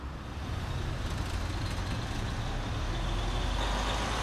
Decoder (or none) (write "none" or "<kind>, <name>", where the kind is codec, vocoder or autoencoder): none